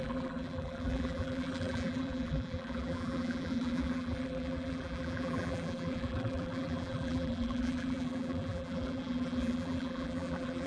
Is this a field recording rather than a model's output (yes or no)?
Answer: no